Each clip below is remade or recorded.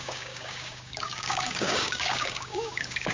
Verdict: remade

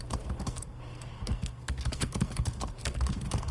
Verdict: remade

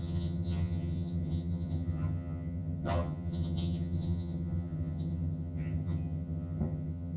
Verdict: remade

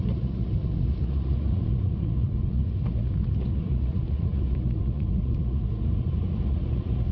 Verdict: remade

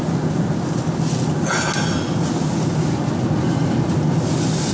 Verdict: recorded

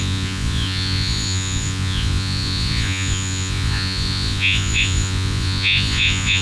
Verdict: remade